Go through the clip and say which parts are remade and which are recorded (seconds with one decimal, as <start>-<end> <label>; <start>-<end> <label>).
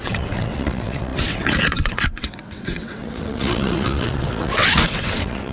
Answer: 0.0-5.5 remade